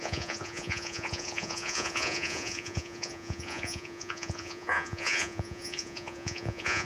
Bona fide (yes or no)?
no